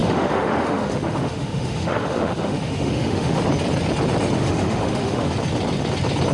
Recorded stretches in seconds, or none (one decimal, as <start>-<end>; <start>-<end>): 3.4-4.4; 5.3-6.3